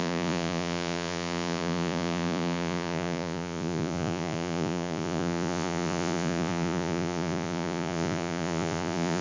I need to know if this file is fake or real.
fake